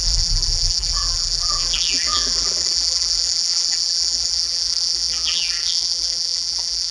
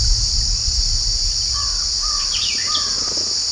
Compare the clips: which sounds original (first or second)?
second